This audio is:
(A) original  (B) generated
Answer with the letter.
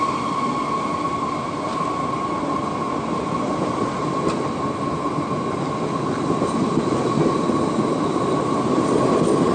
A